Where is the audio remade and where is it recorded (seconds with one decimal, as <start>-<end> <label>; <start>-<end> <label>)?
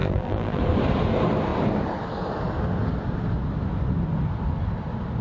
0.0-0.6 remade; 0.6-5.2 recorded